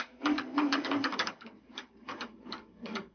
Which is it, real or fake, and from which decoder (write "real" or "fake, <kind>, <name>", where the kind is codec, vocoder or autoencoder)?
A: fake, codec, DAC